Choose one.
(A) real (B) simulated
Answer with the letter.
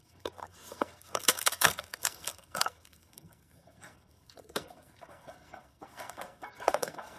B